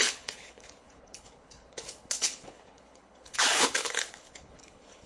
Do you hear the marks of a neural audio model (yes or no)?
yes